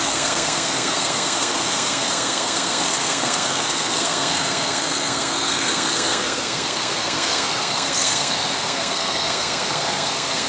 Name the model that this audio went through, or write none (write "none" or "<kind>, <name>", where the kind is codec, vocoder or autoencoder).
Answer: codec, SNAC